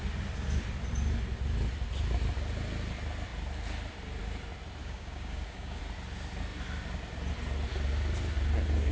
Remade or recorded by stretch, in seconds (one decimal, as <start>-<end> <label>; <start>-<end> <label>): 0.0-4.8 recorded; 4.8-5.8 remade; 5.8-8.9 recorded